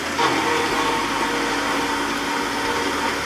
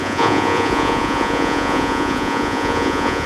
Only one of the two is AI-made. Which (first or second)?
second